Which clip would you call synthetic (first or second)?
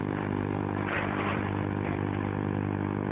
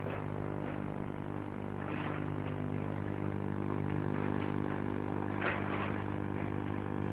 first